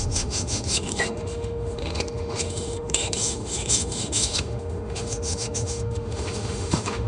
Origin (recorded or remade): remade